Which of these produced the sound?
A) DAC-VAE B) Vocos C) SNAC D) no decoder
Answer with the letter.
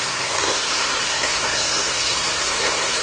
C